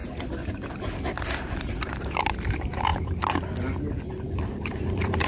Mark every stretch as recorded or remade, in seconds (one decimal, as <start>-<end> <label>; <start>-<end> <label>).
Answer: 0.0-1.2 recorded; 1.2-5.3 remade